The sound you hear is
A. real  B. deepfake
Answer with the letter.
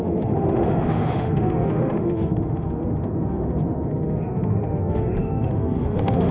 B